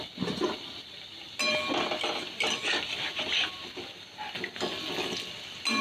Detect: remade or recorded recorded